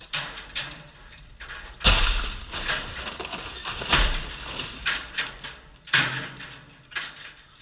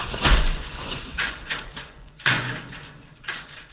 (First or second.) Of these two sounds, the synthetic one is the second